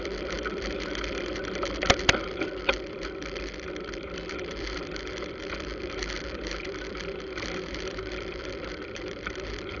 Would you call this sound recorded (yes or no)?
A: no